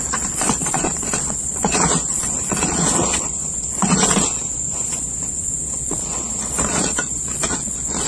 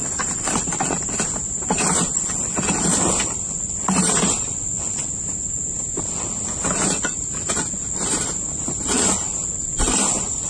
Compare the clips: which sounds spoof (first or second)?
first